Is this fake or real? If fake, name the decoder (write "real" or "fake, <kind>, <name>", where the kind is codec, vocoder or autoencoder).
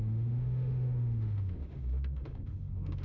fake, autoencoder, DAC-VAE